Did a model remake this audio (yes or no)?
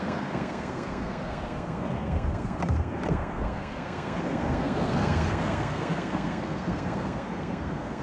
yes